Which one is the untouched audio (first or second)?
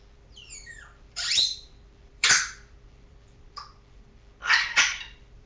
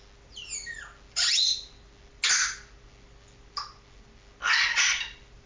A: second